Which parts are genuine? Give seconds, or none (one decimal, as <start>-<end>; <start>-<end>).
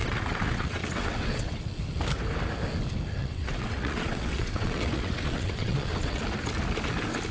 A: 1.6-3.2; 6.2-7.3